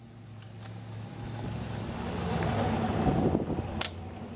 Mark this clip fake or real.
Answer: real